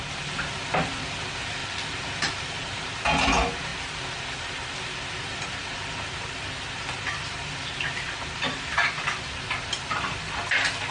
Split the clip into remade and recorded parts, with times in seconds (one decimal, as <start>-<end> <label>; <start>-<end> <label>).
0.0-1.6 recorded; 1.6-2.2 remade; 2.2-10.9 recorded